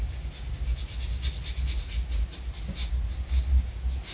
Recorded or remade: recorded